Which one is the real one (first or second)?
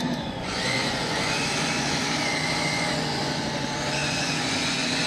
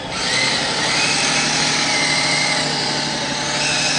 second